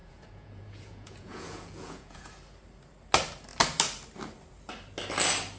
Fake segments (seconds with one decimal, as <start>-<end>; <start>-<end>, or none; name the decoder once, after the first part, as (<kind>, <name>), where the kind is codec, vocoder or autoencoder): 0.0-2.3 (vocoder, Vocos)